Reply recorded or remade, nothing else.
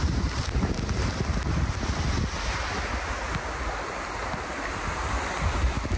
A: recorded